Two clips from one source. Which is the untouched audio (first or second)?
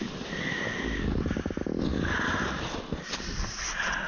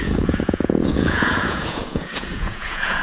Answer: first